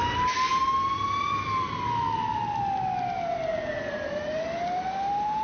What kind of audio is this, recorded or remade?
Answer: recorded